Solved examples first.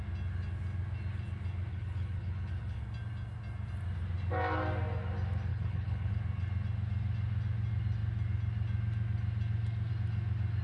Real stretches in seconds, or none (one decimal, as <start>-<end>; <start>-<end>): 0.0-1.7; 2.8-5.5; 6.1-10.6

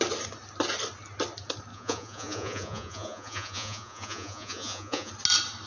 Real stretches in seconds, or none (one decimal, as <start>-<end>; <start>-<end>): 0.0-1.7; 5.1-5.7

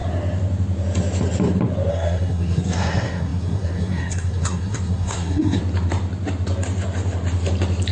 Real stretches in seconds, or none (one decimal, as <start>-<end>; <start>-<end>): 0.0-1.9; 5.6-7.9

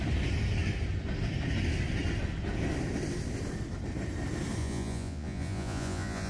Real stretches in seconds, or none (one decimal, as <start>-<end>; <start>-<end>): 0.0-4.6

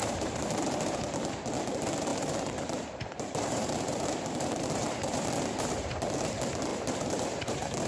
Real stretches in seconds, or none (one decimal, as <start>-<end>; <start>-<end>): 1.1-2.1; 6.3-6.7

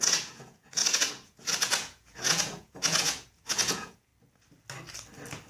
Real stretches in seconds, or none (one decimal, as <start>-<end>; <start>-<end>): 4.1-5.5

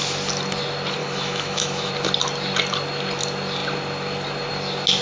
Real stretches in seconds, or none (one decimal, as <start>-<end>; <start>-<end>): 0.0-1.0; 1.9-5.0